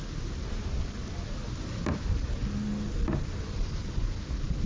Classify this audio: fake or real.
real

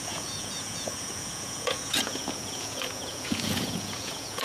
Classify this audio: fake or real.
fake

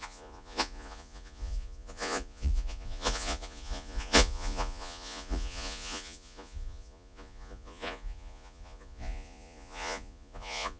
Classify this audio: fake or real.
fake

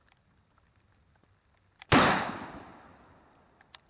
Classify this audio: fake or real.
real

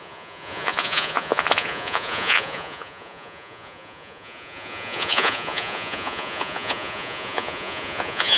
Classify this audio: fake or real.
fake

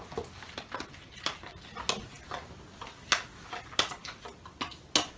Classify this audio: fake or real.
real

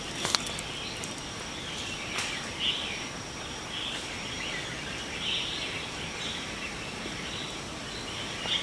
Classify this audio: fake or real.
real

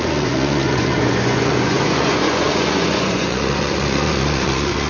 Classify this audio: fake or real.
fake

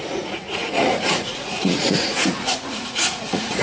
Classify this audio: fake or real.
fake